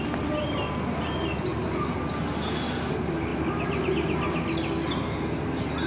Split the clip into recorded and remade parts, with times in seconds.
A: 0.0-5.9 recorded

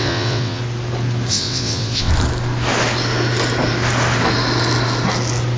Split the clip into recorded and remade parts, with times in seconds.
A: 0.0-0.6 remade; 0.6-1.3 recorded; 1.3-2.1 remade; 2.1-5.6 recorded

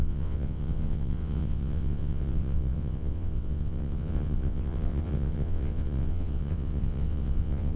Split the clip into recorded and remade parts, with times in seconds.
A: 0.0-7.8 remade

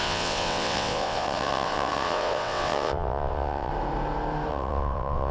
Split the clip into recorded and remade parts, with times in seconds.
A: 0.0-3.7 remade; 3.7-4.5 recorded; 4.5-5.3 remade

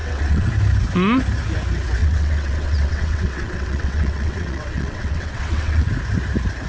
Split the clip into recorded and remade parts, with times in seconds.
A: 0.0-0.5 remade; 0.5-2.0 recorded; 2.0-5.9 remade; 5.9-6.7 recorded